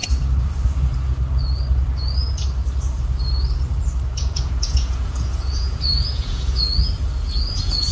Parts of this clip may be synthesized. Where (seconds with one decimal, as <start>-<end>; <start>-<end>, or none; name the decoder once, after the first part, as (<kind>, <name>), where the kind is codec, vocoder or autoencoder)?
4.2-6.7 (vocoder, Vocos); 7.5-7.9

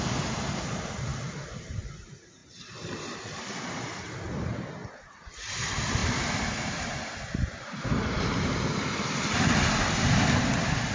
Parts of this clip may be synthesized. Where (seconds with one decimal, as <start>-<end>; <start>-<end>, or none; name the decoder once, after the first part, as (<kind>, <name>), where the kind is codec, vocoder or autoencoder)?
0.0-2.4 (vocoder, BigVGAN v2); 4.3-10.9

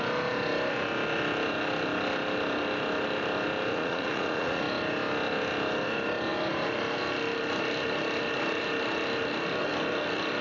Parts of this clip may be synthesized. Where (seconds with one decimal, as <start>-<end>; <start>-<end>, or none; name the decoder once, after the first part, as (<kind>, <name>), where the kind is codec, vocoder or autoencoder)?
3.7-4.6 (vocoder, Vocos)